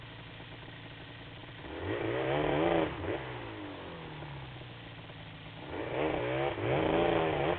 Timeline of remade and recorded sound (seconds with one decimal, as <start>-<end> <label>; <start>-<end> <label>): 0.0-7.6 recorded

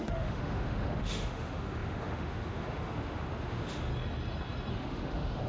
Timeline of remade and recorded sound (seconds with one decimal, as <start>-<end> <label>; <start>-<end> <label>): 0.0-3.9 remade; 3.9-4.7 recorded; 4.7-5.5 remade

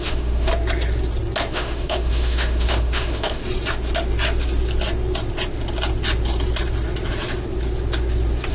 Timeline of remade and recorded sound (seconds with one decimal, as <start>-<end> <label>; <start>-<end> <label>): 0.0-0.5 remade; 0.5-1.5 recorded; 1.5-3.4 remade; 3.4-8.5 recorded